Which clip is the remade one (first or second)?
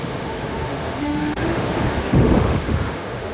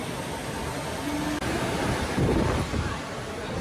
first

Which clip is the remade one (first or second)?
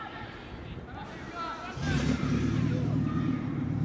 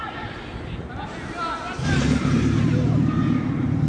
second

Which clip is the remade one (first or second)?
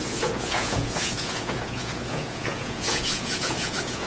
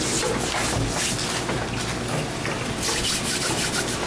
first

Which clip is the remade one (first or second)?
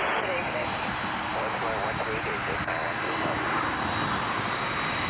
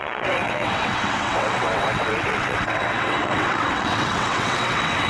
second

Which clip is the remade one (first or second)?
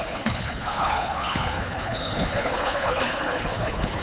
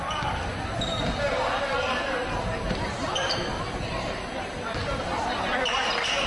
first